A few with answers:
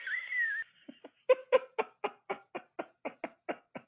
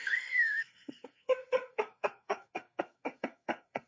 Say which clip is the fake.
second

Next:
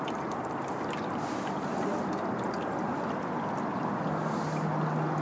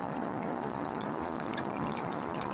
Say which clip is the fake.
second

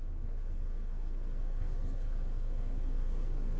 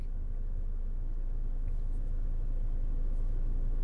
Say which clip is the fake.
first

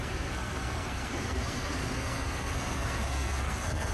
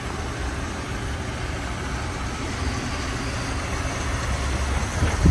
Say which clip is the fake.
first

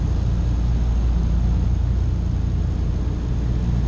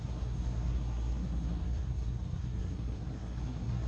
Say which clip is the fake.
second